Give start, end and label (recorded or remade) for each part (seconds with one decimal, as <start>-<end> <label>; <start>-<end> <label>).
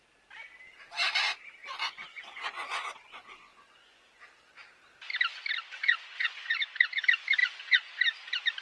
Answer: 0.0-1.6 recorded; 1.6-4.2 remade; 4.2-5.8 recorded; 5.8-7.0 remade; 7.0-7.4 recorded; 7.4-8.0 remade; 8.0-8.6 recorded